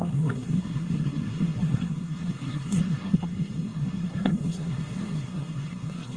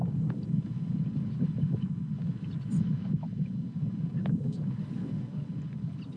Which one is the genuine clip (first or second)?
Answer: second